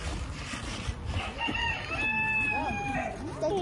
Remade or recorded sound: recorded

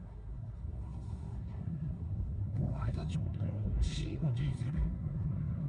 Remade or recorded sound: remade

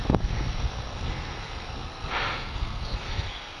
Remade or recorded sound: remade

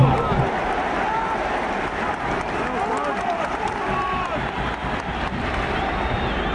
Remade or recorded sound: recorded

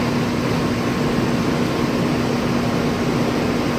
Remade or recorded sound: recorded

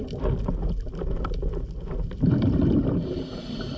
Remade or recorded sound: recorded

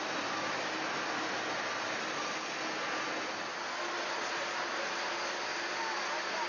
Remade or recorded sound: recorded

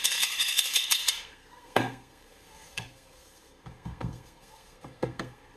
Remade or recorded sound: remade